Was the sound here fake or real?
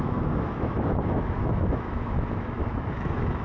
fake